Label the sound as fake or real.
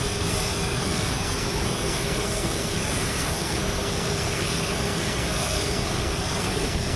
fake